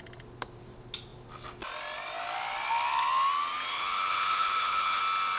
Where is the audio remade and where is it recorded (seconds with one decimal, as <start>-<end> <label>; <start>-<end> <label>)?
0.0-3.7 recorded; 3.7-5.0 remade; 5.0-5.4 recorded